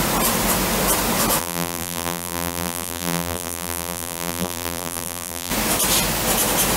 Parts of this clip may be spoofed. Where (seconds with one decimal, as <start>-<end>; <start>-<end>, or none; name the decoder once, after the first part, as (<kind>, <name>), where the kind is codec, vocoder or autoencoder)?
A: 1.4-5.5 (vocoder, BigVGAN v2)